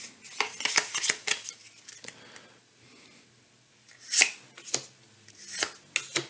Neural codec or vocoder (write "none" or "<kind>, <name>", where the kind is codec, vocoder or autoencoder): none